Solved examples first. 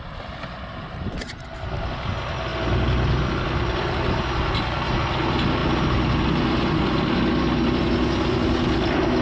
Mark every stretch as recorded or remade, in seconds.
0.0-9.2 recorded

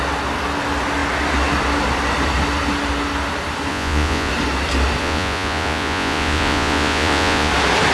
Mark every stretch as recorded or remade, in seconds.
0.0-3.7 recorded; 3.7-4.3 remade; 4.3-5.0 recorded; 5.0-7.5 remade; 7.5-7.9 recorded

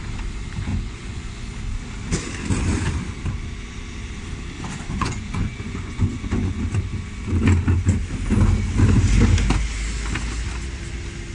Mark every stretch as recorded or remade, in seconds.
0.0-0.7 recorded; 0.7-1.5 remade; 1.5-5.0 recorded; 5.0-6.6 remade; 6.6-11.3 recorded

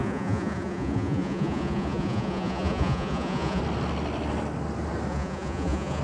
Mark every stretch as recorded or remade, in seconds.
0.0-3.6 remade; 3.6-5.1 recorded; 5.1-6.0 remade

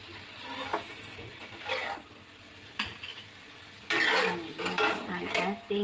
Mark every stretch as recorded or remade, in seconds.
0.0-5.8 recorded